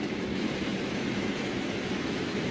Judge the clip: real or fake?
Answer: fake